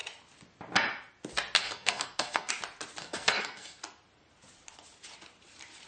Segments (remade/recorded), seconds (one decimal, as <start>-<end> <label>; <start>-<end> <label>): 0.0-1.6 recorded; 1.6-2.5 remade; 2.5-3.0 recorded; 3.0-3.8 remade; 3.8-5.9 recorded